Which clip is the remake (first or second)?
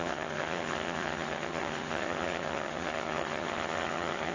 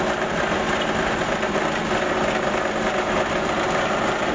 first